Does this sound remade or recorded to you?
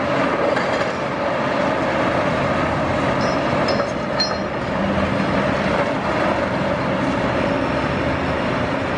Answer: recorded